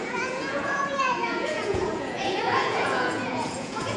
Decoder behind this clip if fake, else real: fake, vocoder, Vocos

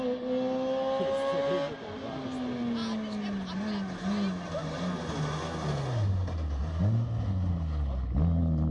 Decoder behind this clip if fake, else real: real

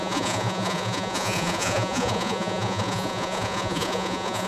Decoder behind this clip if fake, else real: fake, vocoder, Vocos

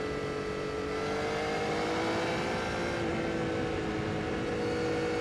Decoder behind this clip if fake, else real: real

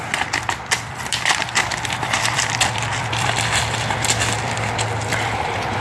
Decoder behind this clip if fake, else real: fake, vocoder, BigVGAN v2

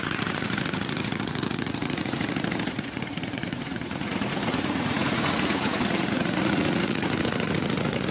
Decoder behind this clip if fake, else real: fake, vocoder, Vocos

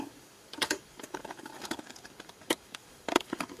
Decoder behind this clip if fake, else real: fake, codec, DAC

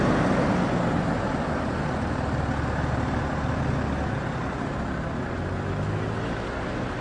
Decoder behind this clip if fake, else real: real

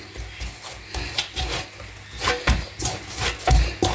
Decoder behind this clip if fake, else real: real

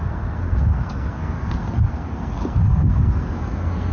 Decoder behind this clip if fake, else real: fake, codec, SNAC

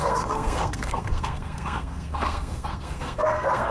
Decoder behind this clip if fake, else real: fake, codec, SNAC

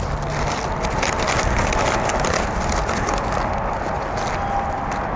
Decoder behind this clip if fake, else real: real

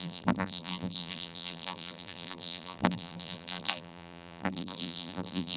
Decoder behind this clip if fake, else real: fake, vocoder, BigVGAN v2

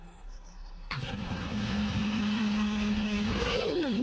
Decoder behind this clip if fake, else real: fake, codec, SNAC